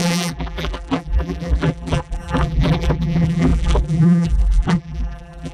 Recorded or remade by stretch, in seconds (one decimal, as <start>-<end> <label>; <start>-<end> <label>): 0.0-5.5 remade